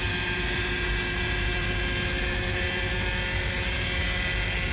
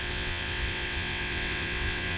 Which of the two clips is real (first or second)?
first